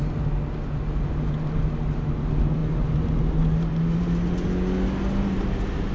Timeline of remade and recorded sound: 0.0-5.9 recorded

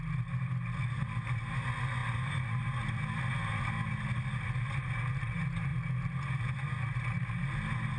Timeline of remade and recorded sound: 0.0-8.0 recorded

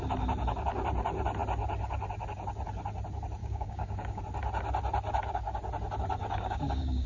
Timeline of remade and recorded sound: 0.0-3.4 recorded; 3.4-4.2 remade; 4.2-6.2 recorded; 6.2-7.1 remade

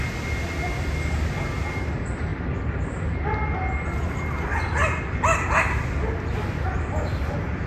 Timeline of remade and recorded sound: 0.0-7.7 recorded

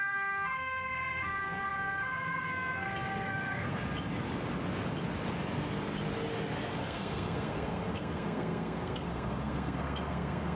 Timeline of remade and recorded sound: 0.0-3.8 remade; 3.8-6.8 recorded; 6.8-10.6 remade